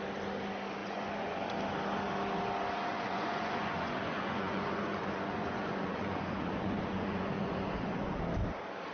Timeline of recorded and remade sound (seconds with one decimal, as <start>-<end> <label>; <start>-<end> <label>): 0.0-0.8 recorded; 0.8-1.5 remade; 1.5-2.9 recorded; 2.9-8.1 remade; 8.1-8.9 recorded